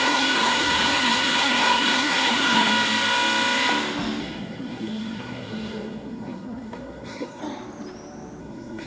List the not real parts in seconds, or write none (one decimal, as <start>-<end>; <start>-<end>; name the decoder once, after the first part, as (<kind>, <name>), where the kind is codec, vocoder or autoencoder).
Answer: 0.0-2.7 (codec, SNAC); 4.2-7.4; 8.4-8.9